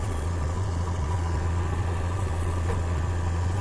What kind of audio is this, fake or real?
fake